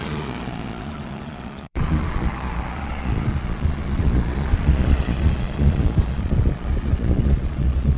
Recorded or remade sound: remade